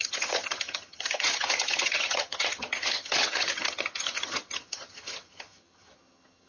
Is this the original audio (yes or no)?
no